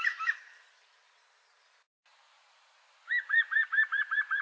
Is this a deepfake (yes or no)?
no